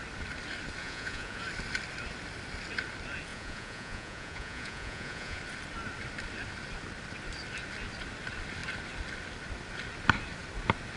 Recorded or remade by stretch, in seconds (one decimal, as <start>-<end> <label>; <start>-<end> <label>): 0.0-0.8 recorded; 0.8-1.4 remade; 1.4-3.3 recorded; 3.3-5.4 remade; 5.4-11.0 recorded